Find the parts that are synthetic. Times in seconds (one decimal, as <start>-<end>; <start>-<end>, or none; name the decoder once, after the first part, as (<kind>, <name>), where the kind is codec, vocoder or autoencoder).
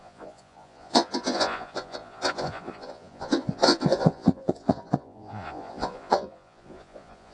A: 0.0-7.3 (vocoder, Vocos)